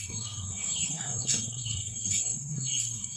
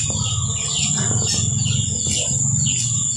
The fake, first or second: first